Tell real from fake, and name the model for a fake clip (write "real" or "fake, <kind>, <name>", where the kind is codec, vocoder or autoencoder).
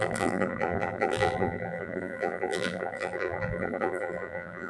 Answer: fake, vocoder, BigVGAN v2